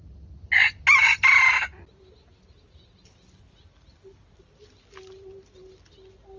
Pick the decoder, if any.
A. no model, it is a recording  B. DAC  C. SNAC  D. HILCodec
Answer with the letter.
A